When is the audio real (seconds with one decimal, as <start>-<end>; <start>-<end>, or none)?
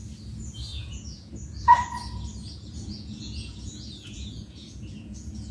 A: 0.0-0.7; 1.3-2.4